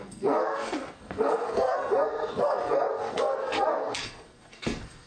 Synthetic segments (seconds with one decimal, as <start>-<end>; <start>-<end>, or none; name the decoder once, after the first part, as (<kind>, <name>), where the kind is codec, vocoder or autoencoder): 0.0-5.1 (codec, SNAC)